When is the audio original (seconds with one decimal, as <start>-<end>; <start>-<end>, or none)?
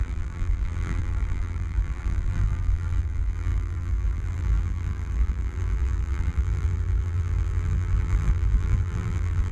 none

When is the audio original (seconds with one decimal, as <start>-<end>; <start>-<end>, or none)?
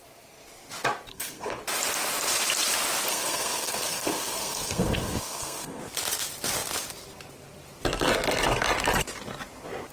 0.0-1.1; 1.6-3.1; 5.8-9.9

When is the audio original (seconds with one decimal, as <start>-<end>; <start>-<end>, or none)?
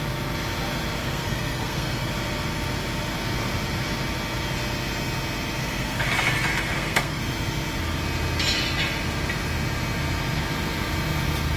0.0-1.0; 2.1-5.6; 6.1-6.5; 7.2-11.6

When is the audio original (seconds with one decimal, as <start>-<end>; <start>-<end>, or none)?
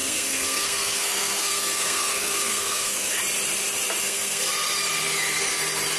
3.2-4.0; 4.4-6.0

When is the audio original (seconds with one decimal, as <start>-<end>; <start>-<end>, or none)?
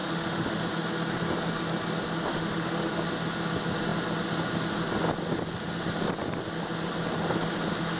0.6-2.3; 2.9-8.0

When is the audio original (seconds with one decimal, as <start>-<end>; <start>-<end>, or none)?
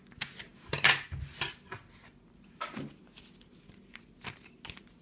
0.0-5.0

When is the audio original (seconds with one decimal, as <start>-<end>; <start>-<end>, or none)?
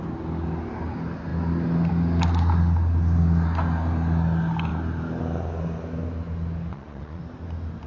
0.0-6.7; 7.2-7.9